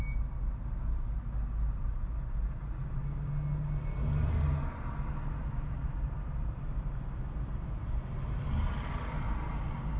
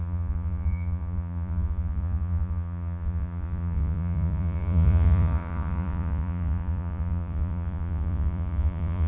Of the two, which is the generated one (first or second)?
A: second